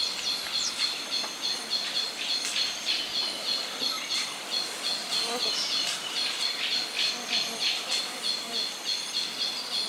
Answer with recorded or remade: recorded